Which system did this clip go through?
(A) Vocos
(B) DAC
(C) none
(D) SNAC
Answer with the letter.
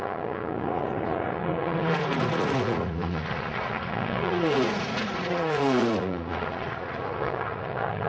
A